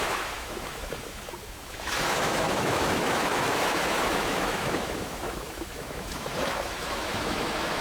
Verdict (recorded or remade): remade